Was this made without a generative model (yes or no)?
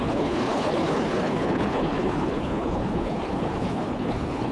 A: no